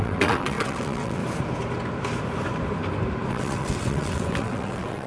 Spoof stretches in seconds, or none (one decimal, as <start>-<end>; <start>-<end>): 0.0-1.2; 3.3-5.1